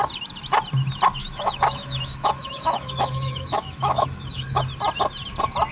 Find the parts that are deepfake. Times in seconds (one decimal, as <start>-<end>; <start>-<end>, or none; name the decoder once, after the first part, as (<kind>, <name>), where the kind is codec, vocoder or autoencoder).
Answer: 1.2-4.6 (autoencoder, DAC-VAE)